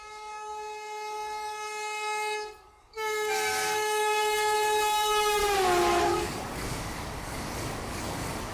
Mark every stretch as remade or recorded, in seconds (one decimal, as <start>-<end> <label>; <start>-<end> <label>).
0.0-5.4 remade; 5.4-6.0 recorded; 6.0-8.5 remade

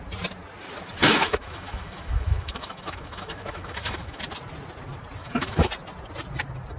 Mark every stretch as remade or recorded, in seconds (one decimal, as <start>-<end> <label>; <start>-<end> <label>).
0.0-1.0 recorded; 1.0-4.2 remade; 4.2-5.2 recorded; 5.2-5.7 remade; 5.7-6.8 recorded

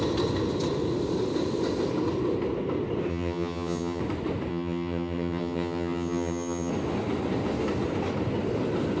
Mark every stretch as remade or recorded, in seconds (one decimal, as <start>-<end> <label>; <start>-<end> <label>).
0.0-3.1 recorded; 3.1-4.0 remade; 4.0-4.5 recorded; 4.5-6.7 remade; 6.7-9.0 recorded

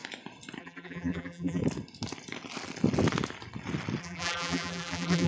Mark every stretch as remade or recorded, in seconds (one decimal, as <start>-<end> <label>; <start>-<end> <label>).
0.0-0.6 recorded; 0.6-1.6 remade; 1.6-4.0 recorded; 4.0-5.3 remade